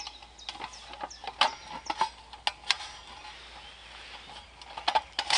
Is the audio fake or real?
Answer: real